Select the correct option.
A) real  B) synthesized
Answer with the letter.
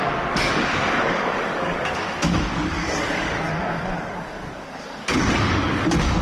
B